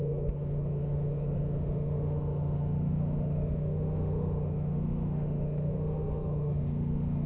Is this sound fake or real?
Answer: fake